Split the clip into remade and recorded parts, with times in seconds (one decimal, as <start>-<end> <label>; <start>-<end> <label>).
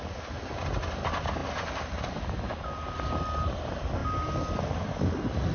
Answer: 0.0-5.5 recorded